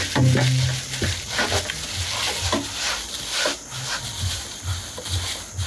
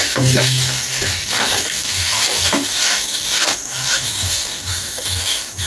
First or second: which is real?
first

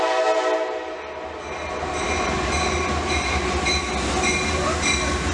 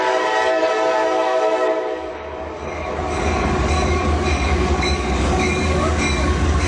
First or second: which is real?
first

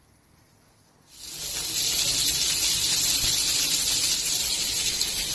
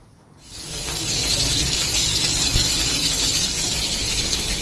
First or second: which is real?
first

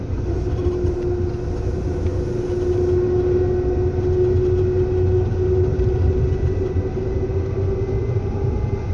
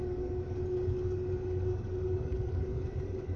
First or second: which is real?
first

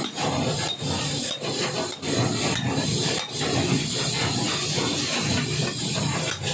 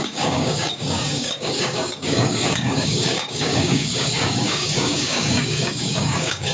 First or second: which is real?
first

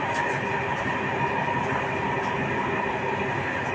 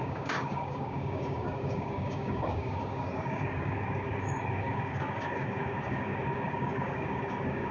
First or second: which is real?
first